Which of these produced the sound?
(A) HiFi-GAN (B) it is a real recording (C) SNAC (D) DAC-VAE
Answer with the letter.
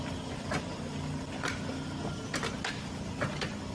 B